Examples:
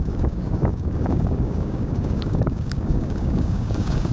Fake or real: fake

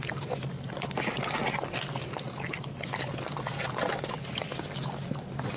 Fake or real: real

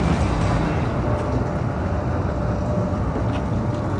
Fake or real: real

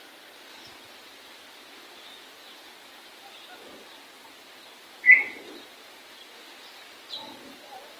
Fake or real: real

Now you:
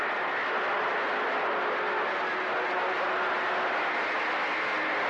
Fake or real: real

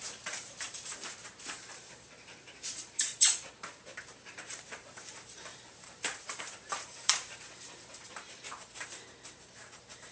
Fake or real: fake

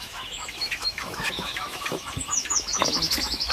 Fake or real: fake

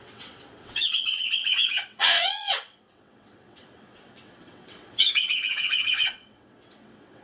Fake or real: fake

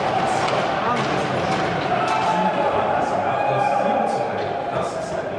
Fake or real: real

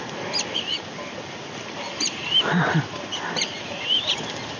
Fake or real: real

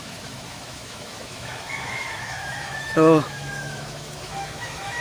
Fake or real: fake